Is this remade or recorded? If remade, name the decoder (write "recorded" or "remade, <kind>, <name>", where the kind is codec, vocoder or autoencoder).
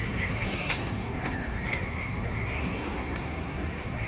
remade, codec, SNAC